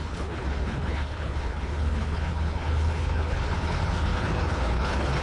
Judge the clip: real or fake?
fake